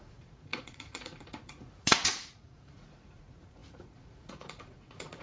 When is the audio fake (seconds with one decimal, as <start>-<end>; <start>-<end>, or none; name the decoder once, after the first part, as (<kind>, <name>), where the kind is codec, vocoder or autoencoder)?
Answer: 0.0-5.2 (vocoder, Vocos)